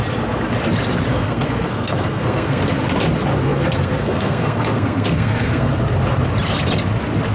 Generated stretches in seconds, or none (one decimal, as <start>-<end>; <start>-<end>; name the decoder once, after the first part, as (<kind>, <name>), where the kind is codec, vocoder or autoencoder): 1.1-2.6 (codec, SNAC); 3.3-5.7